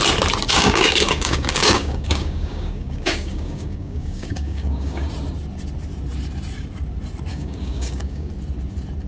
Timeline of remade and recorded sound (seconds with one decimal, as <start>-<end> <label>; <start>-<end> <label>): 0.0-0.5 recorded; 0.5-5.1 remade; 5.1-7.3 recorded; 7.3-8.3 remade; 8.3-9.1 recorded